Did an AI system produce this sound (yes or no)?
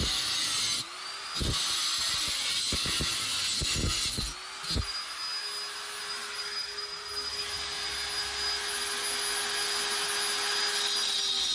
no